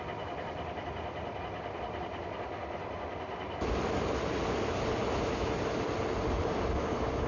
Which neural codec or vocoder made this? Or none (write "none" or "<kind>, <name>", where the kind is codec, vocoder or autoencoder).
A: none